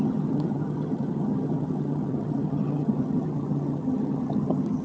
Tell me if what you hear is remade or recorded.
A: remade